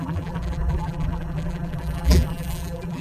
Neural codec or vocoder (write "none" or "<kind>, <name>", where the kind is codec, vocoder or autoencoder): vocoder, BigVGAN v2